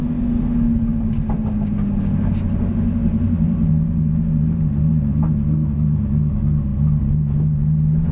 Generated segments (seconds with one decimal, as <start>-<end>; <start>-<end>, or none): 3.0-3.7